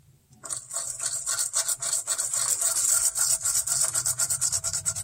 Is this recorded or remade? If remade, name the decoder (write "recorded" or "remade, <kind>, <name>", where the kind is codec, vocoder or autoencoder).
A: recorded